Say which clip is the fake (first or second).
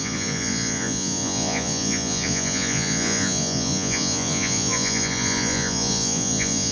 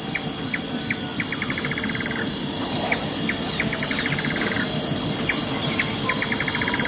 first